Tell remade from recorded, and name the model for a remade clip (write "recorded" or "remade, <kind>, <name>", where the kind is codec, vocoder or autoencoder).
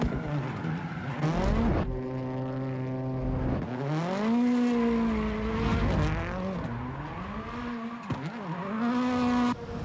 recorded